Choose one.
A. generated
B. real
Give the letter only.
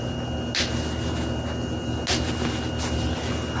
B